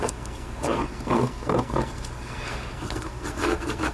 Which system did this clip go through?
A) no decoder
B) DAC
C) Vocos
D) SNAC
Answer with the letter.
D